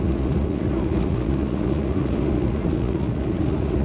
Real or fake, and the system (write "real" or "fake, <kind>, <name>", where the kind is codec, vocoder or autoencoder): fake, vocoder, Vocos